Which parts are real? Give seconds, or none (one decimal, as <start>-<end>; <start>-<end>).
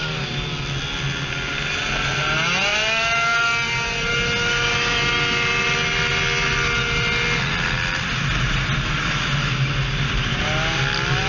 0.0-2.7; 4.1-11.3